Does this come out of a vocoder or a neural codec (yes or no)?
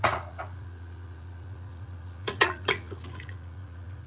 yes